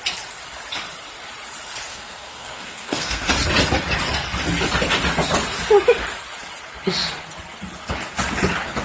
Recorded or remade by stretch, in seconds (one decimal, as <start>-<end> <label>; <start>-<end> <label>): 0.0-1.9 recorded; 1.9-3.3 remade; 3.3-8.8 recorded

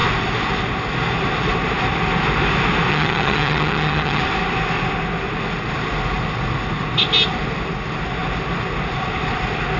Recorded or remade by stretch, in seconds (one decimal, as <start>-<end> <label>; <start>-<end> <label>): 0.0-2.9 recorded; 2.9-4.2 remade; 4.2-9.8 recorded

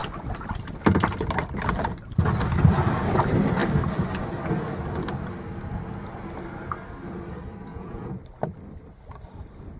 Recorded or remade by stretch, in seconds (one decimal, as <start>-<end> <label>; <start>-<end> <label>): 0.0-7.7 recorded; 7.7-8.2 remade; 8.2-9.8 recorded

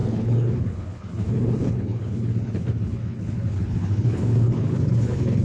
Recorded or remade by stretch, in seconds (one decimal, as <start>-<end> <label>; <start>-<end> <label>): 0.0-5.4 remade

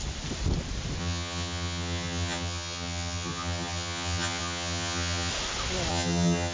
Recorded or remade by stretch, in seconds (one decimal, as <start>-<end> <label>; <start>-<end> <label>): 0.0-1.0 recorded; 1.0-5.3 remade; 5.3-5.9 recorded; 5.9-6.5 remade